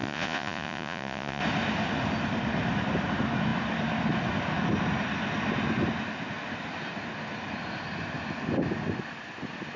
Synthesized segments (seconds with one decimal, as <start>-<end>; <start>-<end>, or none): 0.0-1.4